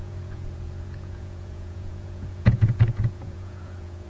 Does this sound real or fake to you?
fake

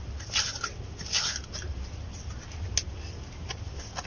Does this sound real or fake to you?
real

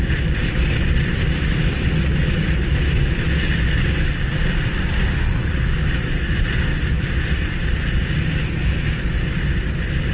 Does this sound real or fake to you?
real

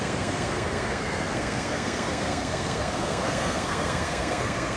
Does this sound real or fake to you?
fake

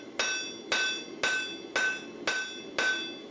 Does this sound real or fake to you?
real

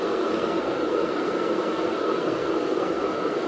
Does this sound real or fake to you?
fake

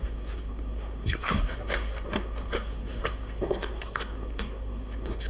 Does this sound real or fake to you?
fake